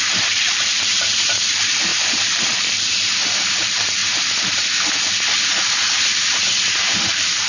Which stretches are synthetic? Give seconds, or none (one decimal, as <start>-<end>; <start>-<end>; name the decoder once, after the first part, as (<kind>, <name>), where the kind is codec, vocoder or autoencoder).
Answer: 0.0-4.0 (vocoder, BigVGAN v2); 6.8-7.5